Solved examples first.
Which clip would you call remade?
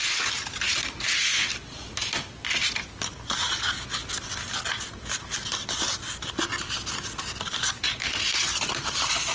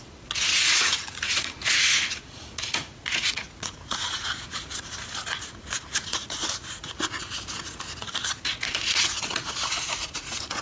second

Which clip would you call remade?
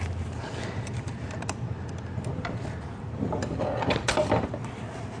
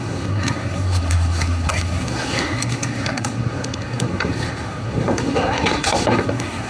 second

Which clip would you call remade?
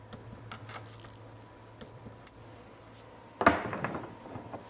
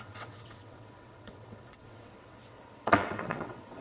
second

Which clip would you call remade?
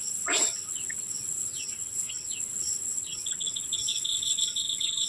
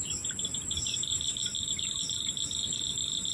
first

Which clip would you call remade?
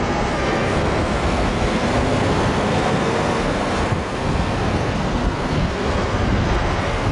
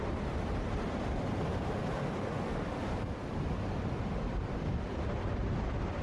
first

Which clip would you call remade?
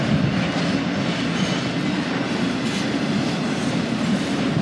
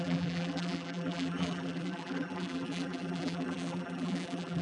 second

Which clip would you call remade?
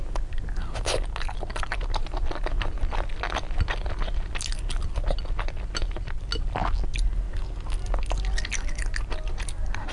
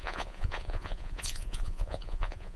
second